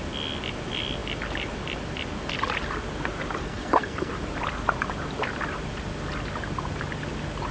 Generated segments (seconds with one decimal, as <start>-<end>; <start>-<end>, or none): 3.4-4.1